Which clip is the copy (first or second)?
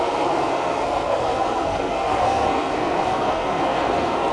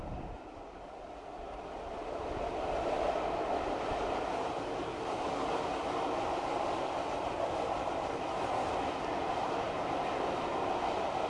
first